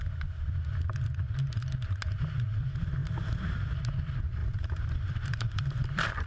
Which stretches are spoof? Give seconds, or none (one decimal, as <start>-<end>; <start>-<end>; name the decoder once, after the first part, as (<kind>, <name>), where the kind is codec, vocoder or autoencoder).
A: 3.0-3.8 (vocoder, BigVGAN v2); 4.4-6.3